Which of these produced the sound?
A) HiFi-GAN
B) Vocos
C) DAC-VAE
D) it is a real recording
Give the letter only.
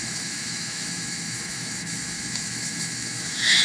C